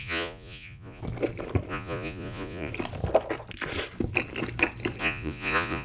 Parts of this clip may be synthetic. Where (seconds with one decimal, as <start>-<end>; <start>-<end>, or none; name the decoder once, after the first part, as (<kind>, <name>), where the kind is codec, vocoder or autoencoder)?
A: 0.0-1.0 (vocoder, Vocos); 1.7-2.7; 5.0-5.8